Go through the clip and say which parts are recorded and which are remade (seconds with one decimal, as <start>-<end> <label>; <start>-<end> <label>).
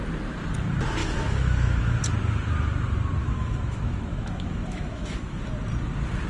0.0-1.0 recorded; 1.0-2.0 remade; 2.0-3.2 recorded; 3.2-5.5 remade; 5.5-6.3 recorded